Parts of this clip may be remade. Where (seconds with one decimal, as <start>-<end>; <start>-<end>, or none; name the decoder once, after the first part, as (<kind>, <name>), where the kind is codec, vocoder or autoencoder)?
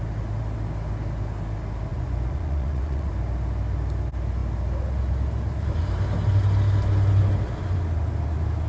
1.9-3.1 (vocoder, Vocos)